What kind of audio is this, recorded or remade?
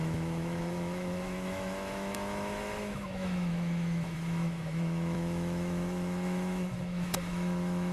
remade